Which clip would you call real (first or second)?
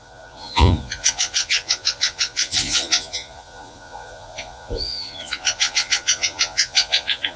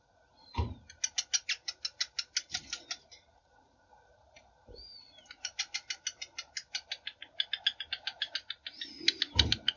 second